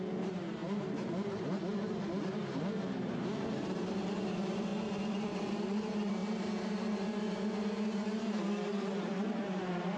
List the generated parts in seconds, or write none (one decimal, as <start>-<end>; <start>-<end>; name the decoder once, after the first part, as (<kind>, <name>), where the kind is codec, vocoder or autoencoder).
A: 0.0-4.7 (vocoder, BigVGAN v2); 5.2-10.0